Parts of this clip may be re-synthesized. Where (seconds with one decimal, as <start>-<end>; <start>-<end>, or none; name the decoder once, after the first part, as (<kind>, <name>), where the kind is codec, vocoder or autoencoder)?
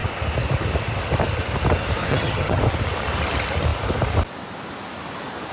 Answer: 2.0-2.6 (vocoder, HiFi-GAN)